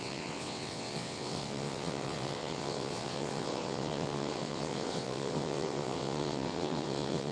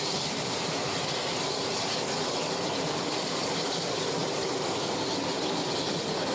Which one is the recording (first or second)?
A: second